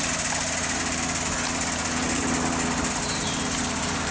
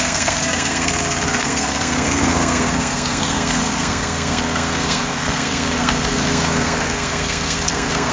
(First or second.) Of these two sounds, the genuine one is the first